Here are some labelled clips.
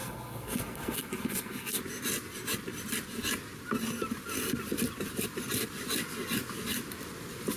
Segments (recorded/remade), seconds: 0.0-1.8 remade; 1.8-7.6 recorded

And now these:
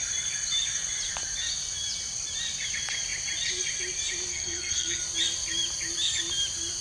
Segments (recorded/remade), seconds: 0.0-4.3 recorded; 4.3-5.0 remade; 5.0-6.8 recorded

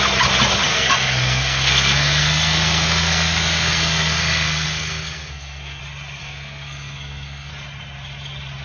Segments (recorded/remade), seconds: 0.0-0.7 recorded; 0.7-5.8 remade; 5.8-6.2 recorded; 6.2-7.5 remade; 7.5-8.6 recorded

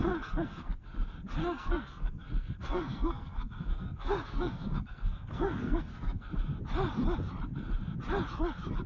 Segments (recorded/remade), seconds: 0.0-0.9 remade; 0.9-1.4 recorded; 1.4-6.3 remade; 6.3-8.9 recorded

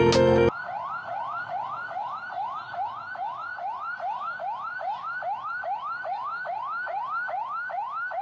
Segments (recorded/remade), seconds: 0.0-8.2 recorded

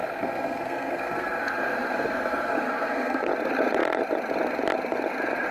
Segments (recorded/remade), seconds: 0.0-3.3 remade; 3.3-5.5 recorded

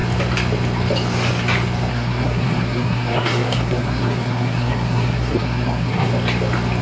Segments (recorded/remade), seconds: 0.0-1.9 recorded; 1.9-6.1 remade; 6.1-6.8 recorded